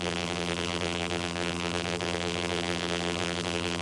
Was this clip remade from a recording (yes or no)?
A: yes